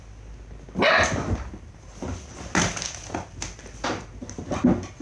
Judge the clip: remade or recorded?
recorded